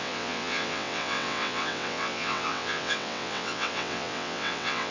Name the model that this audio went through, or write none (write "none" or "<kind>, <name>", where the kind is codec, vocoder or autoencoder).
vocoder, WaveNeXt